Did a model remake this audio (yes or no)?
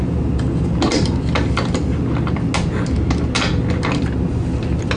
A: no